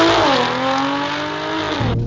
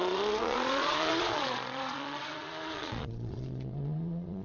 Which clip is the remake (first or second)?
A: second